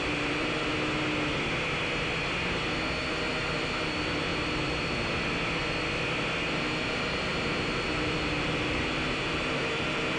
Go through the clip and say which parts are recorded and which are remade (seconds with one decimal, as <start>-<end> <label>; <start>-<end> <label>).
0.0-0.7 remade; 0.7-3.1 recorded; 3.1-4.3 remade; 4.3-6.5 recorded; 6.5-10.2 remade

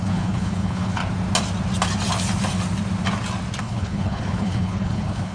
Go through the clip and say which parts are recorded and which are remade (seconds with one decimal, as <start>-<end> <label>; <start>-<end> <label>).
0.0-1.0 remade; 1.0-3.6 recorded; 3.6-5.3 remade

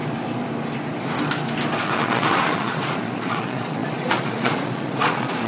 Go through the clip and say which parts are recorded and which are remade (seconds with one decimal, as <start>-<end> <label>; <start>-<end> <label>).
0.0-1.8 recorded; 1.8-5.5 remade

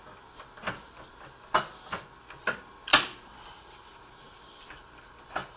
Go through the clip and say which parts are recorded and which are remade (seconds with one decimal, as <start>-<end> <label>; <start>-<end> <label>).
0.0-2.9 recorded; 2.9-5.6 remade

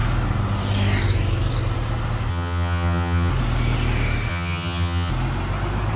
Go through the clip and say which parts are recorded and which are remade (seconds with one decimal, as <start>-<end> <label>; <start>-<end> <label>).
0.0-2.3 recorded; 2.3-3.3 remade; 3.3-4.3 recorded; 4.3-5.1 remade; 5.1-6.0 recorded

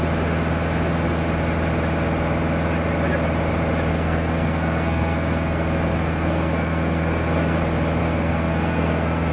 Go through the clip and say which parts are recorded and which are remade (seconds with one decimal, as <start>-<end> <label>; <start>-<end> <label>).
0.0-3.9 recorded; 3.9-7.6 remade; 7.6-8.0 recorded; 8.0-9.3 remade

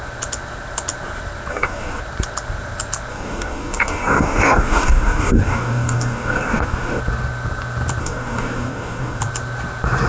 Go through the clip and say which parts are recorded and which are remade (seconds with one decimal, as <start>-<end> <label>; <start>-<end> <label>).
0.0-1.5 recorded; 1.5-2.0 remade; 2.0-3.1 recorded; 3.1-7.0 remade; 7.0-8.0 recorded; 8.0-9.2 remade; 9.2-10.1 recorded

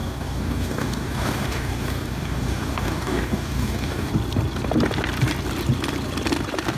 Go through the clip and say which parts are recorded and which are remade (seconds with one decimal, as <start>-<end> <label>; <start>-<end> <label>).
0.0-4.1 remade; 4.1-6.8 recorded